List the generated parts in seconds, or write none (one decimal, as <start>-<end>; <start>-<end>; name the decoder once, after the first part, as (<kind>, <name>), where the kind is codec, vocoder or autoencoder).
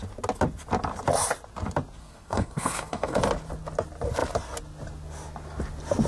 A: 2.0-3.2 (codec, SNAC)